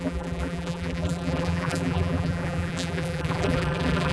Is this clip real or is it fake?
fake